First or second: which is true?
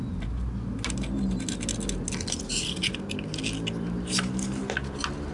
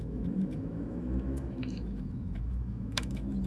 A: first